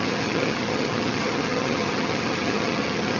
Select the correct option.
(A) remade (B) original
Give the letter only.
A